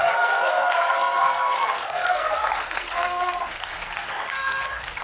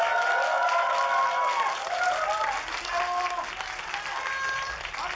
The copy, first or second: first